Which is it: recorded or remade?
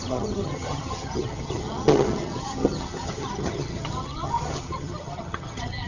remade